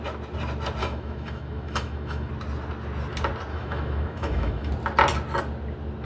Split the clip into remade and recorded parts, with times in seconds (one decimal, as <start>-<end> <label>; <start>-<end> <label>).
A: 0.0-0.8 recorded; 0.8-2.3 remade; 2.3-3.5 recorded; 3.5-4.7 remade; 4.7-6.0 recorded